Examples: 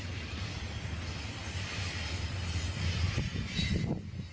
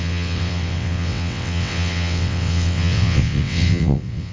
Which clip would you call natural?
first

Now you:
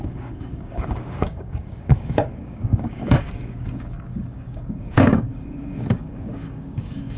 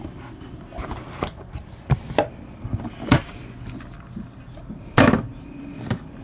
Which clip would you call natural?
second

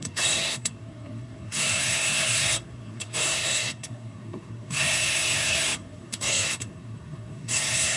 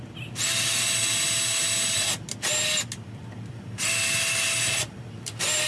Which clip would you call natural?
second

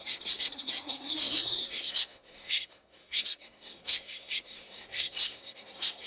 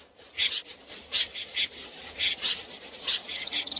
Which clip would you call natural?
second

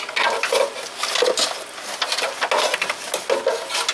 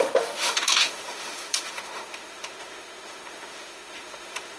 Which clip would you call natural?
first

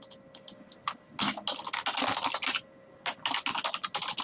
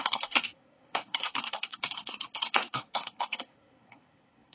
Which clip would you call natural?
first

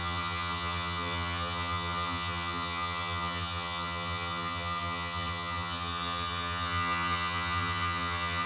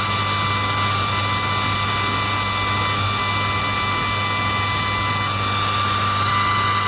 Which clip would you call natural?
second